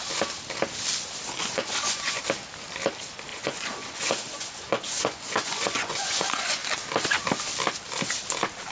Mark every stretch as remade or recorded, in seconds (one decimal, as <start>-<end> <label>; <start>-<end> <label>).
0.0-1.4 recorded; 1.4-2.2 remade; 2.2-3.3 recorded; 3.3-6.6 remade; 6.6-8.7 recorded